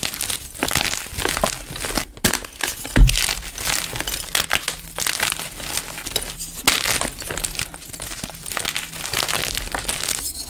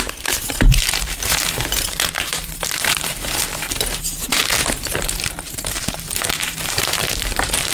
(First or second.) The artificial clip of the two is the second